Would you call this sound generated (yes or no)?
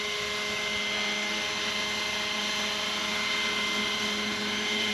no